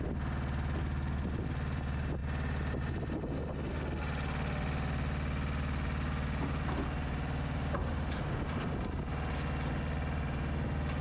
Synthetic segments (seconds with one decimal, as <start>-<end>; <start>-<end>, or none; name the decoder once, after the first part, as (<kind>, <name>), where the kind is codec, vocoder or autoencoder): 7.8-8.7 (vocoder, BigVGAN v2)